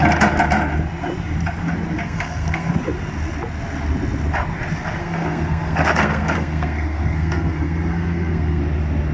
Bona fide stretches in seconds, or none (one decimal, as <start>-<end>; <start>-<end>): 0.0-2.0; 2.7-5.0; 8.6-9.1